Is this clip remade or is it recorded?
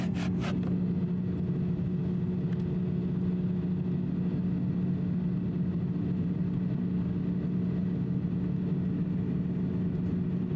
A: recorded